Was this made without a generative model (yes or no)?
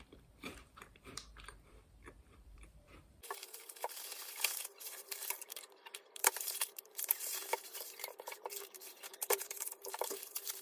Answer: no